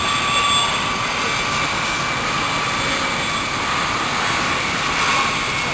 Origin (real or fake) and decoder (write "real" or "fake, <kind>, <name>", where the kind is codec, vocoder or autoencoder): real